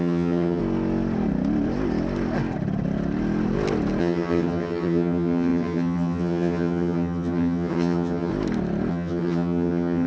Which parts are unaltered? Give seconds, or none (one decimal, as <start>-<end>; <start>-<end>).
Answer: 0.6-4.0; 8.3-8.9